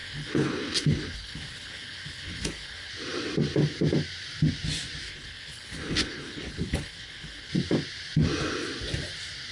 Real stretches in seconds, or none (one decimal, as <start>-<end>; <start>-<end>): 2.9-5.1; 7.5-9.5